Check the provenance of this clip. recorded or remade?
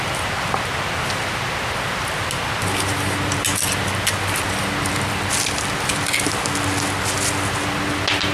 recorded